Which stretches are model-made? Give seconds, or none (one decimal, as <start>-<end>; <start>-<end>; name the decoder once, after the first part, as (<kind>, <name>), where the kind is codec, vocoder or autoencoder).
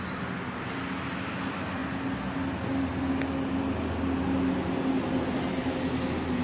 none